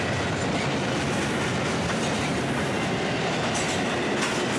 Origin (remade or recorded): recorded